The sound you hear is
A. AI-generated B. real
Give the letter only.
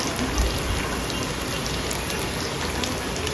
B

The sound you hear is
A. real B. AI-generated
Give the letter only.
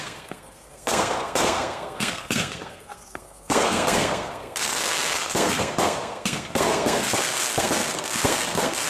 B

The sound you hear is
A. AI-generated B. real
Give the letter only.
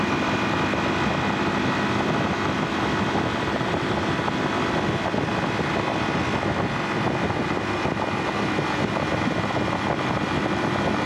B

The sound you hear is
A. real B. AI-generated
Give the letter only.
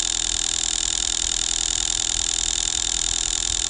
A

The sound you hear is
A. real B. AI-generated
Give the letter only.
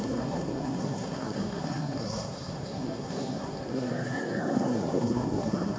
B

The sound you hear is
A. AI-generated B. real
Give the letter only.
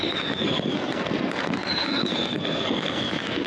A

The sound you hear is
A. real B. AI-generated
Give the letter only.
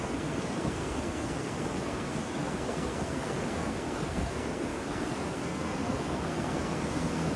B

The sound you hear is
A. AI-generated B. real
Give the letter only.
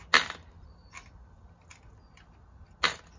B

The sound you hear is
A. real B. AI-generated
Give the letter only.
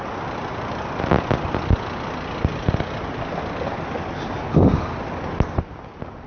A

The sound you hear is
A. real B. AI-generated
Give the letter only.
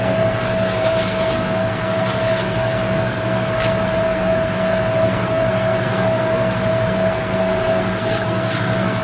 B